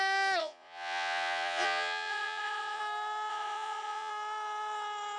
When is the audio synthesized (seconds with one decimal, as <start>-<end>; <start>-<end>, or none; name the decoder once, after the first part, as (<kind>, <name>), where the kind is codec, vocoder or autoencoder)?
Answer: 0.4-2.8 (vocoder, Vocos); 3.3-4.1